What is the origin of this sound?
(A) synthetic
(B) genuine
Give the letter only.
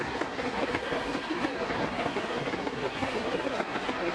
A